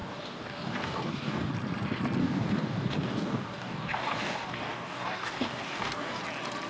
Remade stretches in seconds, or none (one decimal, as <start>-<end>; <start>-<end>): 0.0-1.5; 2.2-6.2